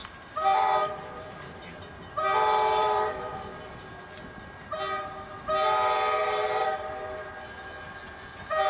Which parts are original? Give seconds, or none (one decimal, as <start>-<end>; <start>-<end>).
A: 3.5-6.2; 6.9-8.7